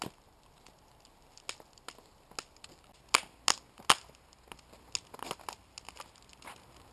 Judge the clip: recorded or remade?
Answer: recorded